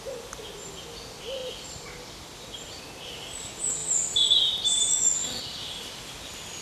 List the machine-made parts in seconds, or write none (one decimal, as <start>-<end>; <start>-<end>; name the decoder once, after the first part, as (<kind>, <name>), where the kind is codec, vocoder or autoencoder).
1.4-2.8 (vocoder, BigVGAN v2); 3.8-4.5; 5.2-5.8